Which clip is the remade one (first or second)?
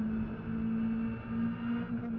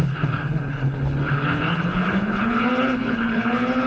second